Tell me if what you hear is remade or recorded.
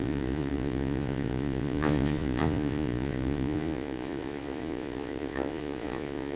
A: remade